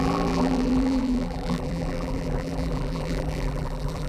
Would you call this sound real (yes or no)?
no